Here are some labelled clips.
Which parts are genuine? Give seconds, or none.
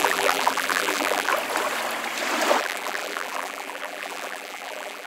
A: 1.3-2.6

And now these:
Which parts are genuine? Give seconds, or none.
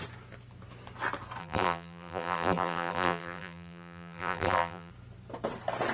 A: 0.0-1.4; 4.9-5.9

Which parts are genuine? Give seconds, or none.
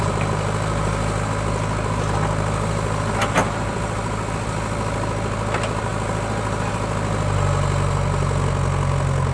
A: 0.0-9.3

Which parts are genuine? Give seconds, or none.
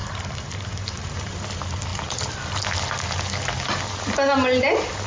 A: 1.4-5.1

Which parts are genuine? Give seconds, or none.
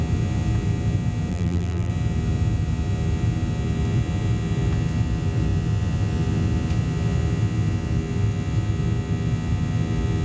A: 0.0-1.3; 1.9-10.2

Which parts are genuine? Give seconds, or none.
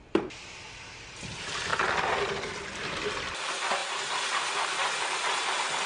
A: 1.7-3.0; 3.8-5.9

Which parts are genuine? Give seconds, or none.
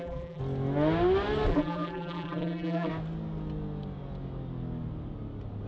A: 0.4-1.5; 2.9-5.7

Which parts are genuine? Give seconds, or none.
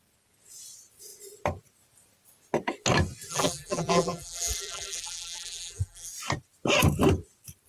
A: 0.0-3.3; 6.1-7.7